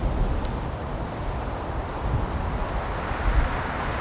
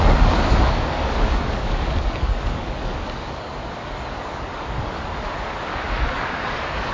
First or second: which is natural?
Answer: first